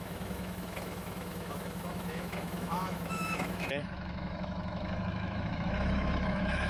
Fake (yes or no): yes